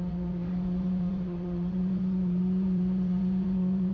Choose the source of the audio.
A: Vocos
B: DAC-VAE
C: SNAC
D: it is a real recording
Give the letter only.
A